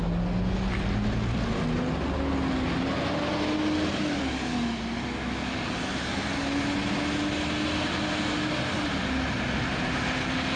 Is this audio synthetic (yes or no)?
no